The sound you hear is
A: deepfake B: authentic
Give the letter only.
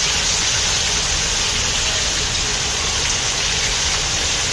A